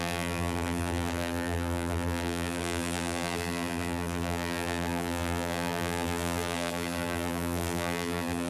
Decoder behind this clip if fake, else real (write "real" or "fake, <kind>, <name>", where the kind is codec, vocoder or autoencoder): fake, vocoder, BigVGAN v2